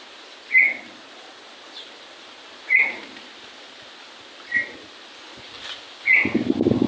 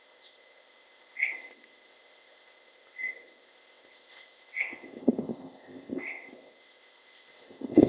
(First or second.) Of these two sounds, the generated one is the second